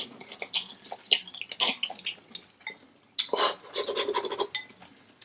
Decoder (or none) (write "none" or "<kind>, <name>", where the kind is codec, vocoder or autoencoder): none